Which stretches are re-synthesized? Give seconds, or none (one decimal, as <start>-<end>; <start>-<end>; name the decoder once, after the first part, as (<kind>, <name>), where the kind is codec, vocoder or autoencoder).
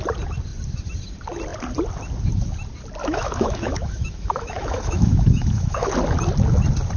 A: 3.0-5.9 (autoencoder, DAC-VAE)